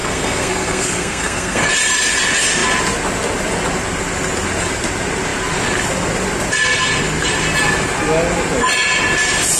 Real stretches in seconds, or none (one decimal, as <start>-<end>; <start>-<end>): 1.7-9.6